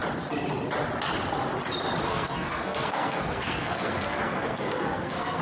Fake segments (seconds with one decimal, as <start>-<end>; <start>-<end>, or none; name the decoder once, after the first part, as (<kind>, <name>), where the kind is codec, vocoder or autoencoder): 2.1-5.4 (codec, SNAC)